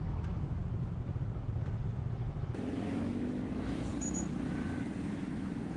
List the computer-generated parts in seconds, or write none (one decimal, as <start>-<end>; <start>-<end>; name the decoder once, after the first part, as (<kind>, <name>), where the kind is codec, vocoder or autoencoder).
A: 0.0-0.6 (autoencoder, DAC-VAE); 2.1-3.9; 5.1-5.8